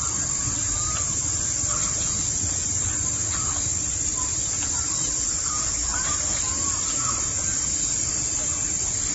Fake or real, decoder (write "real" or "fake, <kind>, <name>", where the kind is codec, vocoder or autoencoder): real